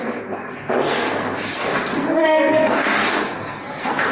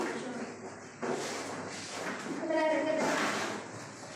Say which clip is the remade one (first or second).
first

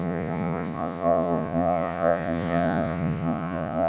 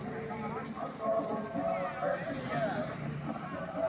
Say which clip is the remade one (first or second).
first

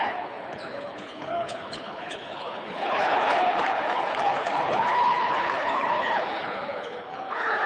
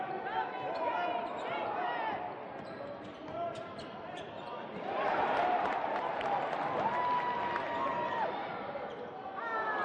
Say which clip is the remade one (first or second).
first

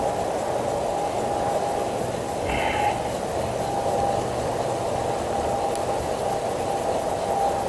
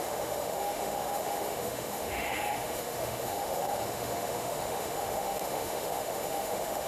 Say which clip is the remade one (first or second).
second